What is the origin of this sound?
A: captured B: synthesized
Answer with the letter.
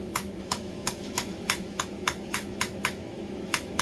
B